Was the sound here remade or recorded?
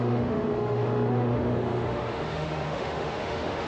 remade